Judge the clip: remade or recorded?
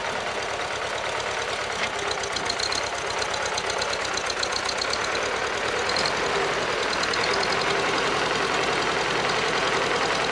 recorded